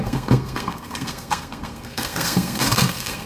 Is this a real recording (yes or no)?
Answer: no